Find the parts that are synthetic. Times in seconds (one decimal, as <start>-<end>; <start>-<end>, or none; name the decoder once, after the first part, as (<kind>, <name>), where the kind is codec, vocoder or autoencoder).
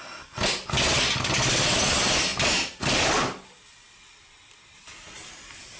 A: none